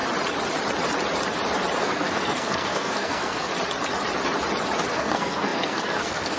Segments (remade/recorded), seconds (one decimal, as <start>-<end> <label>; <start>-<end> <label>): 0.0-1.8 recorded; 1.8-3.5 remade; 3.5-4.9 recorded; 4.9-6.4 remade